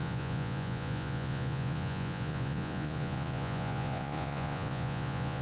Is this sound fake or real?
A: fake